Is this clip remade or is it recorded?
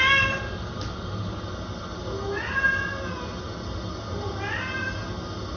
recorded